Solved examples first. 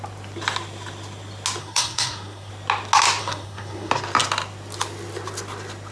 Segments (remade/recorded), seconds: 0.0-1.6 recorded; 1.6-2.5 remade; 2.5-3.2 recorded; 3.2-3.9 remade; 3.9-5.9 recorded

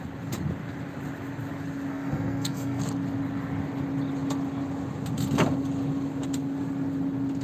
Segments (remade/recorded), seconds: 0.0-1.9 recorded; 1.9-2.8 remade; 2.8-7.4 recorded

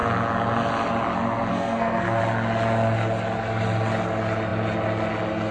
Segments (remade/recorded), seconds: 0.0-1.5 recorded; 1.5-2.2 remade; 2.2-5.5 recorded

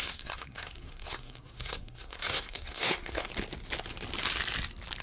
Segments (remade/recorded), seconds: 0.0-3.3 remade; 3.3-5.0 recorded